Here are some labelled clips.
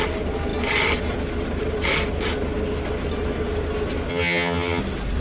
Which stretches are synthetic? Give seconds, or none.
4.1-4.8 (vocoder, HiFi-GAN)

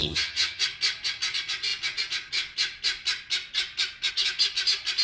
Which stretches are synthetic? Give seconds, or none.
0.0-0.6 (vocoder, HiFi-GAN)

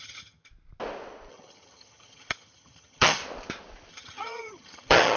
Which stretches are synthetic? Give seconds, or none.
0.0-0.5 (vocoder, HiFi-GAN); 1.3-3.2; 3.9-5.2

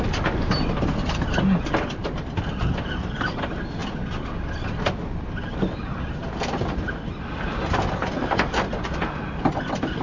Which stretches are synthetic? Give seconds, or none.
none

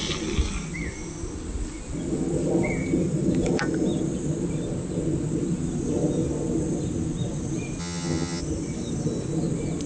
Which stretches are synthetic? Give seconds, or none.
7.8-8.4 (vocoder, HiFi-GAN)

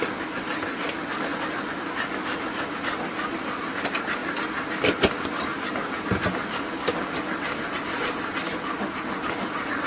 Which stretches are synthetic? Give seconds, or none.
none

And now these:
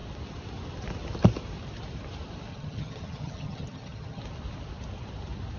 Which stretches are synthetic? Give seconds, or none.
2.5-4.2 (vocoder, HiFi-GAN)